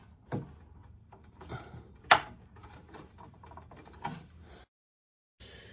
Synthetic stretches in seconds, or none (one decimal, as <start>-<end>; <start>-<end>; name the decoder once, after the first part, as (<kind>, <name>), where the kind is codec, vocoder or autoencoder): 0.8-2.0 (vocoder, BigVGAN v2); 2.6-5.3